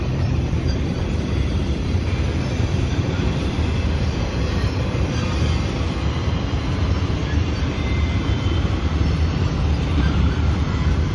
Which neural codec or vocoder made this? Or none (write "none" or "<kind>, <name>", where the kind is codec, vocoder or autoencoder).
vocoder, BigVGAN v2